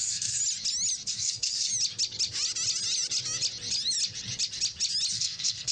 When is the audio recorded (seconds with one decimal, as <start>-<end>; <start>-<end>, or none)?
0.4-1.1; 1.7-5.1